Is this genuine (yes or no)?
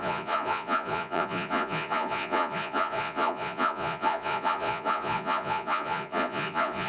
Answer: no